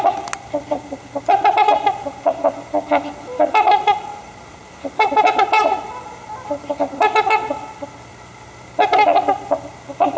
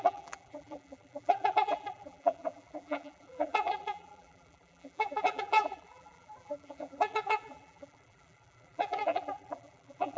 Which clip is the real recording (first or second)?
first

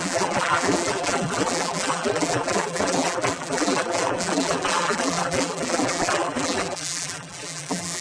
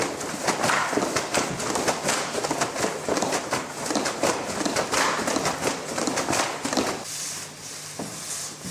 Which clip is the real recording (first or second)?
second